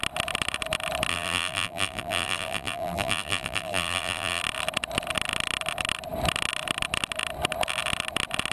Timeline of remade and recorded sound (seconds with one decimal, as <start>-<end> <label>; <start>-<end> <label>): 0.0-1.1 recorded; 1.1-4.4 remade; 4.4-8.5 recorded